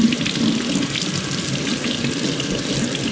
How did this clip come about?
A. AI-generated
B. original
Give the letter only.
B